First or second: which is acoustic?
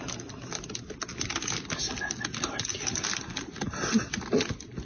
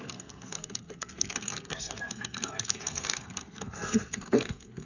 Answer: first